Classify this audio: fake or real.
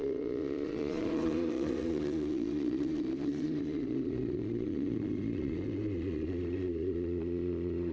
fake